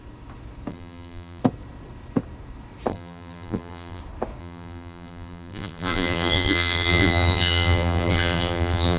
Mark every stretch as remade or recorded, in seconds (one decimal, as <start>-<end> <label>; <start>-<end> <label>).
0.0-0.7 recorded; 0.7-1.4 remade; 1.4-2.9 recorded; 2.9-4.0 remade; 4.0-4.4 recorded; 4.4-9.0 remade